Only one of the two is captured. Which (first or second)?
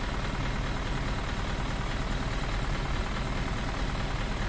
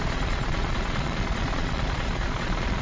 first